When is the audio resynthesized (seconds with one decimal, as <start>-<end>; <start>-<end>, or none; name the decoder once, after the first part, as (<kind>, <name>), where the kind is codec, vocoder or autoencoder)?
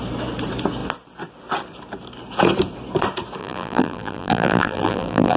3.4-5.4 (vocoder, BigVGAN v2)